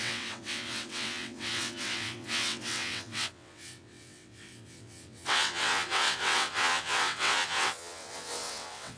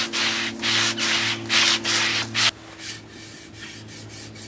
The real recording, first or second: second